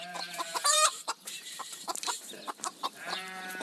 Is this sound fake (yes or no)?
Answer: yes